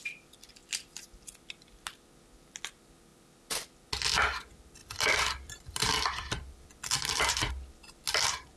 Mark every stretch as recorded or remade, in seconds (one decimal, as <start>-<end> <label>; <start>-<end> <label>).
0.0-0.6 recorded; 0.6-1.2 remade; 1.2-4.8 recorded; 4.8-7.5 remade; 7.5-8.6 recorded